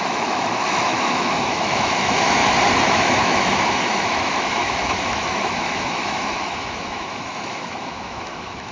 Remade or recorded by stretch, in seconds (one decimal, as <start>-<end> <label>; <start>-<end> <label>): 0.0-2.4 remade; 2.4-2.9 recorded; 2.9-8.7 remade

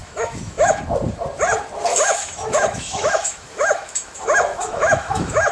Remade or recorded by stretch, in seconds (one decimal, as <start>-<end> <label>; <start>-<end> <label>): 0.0-0.8 remade; 0.8-1.9 recorded; 1.9-5.5 remade

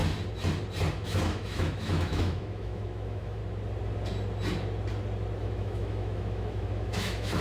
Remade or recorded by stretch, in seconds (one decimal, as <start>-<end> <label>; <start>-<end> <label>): 0.0-0.9 recorded; 0.9-3.4 remade; 3.4-5.4 recorded; 5.4-7.4 remade

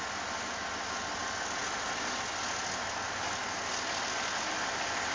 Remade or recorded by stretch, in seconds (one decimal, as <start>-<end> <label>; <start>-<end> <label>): 0.0-5.1 recorded

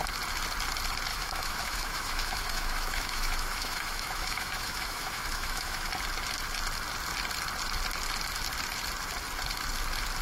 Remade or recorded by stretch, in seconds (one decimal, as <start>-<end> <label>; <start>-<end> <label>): 0.0-1.1 recorded; 1.1-5.9 remade; 5.9-10.2 recorded